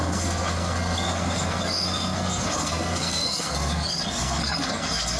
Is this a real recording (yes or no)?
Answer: no